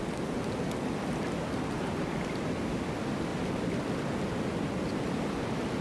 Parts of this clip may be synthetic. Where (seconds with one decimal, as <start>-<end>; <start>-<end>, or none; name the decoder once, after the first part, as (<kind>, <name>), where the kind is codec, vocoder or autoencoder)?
none